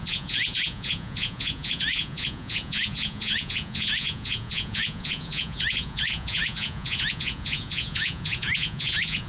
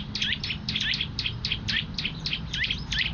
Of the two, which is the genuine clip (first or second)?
second